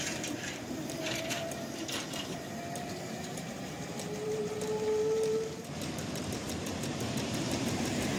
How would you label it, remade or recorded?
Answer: remade